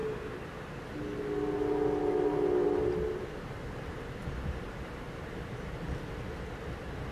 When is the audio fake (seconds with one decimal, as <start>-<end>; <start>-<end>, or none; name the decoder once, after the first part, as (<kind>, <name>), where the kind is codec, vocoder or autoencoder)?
4.3-7.1 (vocoder, BigVGAN v2)